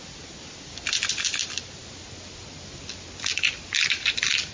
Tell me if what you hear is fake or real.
real